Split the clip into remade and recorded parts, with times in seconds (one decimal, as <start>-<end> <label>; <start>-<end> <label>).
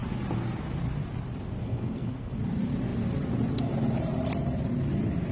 0.0-1.6 recorded; 1.6-2.3 remade; 2.3-5.3 recorded